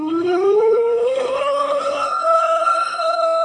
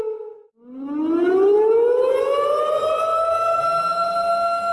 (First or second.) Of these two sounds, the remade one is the first